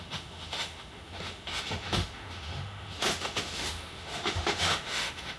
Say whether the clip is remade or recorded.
remade